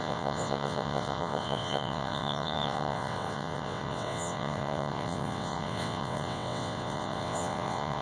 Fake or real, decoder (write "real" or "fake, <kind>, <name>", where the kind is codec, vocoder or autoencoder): fake, vocoder, WaveNeXt